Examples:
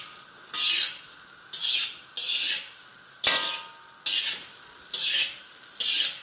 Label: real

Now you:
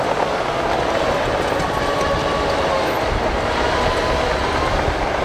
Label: real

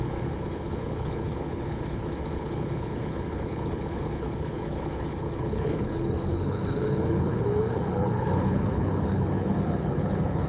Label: fake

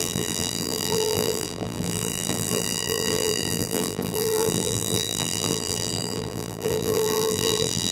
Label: fake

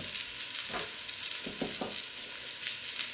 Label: real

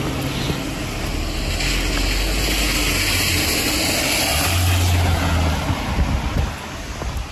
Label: real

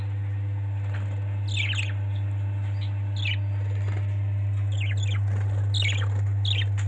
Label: real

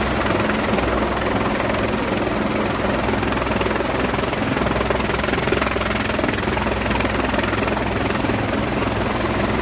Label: real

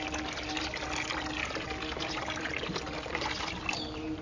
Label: real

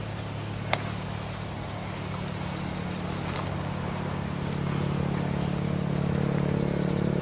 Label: real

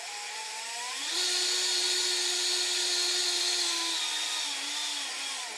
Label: real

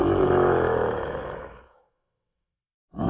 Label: fake